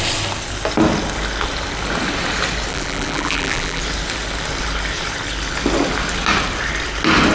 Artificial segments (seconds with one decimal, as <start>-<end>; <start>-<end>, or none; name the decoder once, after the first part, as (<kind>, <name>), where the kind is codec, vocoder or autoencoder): 2.7-3.8 (vocoder, BigVGAN v2)

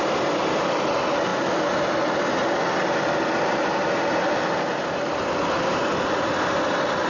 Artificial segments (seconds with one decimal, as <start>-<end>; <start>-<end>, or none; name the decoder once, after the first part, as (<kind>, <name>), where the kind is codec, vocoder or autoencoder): none

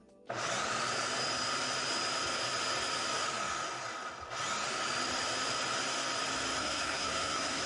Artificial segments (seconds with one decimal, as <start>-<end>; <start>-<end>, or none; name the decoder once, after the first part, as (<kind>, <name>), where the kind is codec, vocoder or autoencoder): 6.6-7.7 (codec, SNAC)

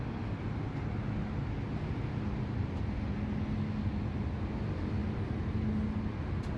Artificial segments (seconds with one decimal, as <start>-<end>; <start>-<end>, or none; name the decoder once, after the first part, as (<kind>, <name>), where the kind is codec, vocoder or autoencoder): none

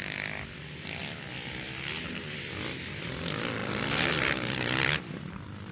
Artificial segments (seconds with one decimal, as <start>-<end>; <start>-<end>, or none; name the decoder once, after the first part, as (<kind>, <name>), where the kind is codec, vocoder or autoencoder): 0.0-1.0 (vocoder, BigVGAN v2); 2.4-3.6; 5.3-5.7